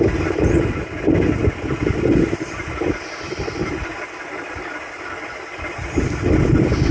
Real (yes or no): yes